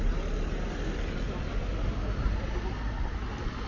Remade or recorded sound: recorded